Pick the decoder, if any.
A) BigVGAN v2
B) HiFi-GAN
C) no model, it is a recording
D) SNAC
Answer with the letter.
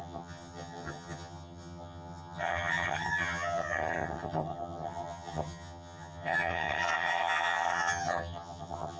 B